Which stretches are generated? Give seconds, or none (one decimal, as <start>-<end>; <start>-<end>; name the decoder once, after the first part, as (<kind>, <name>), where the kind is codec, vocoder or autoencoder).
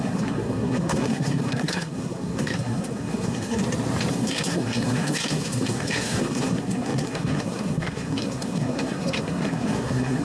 0.0-3.6 (codec, SNAC); 4.1-10.2